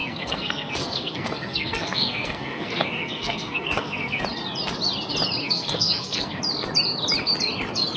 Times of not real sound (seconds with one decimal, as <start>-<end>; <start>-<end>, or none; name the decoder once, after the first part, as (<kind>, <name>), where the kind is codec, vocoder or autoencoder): 0.0-4.2 (codec, SNAC); 5.4-6.4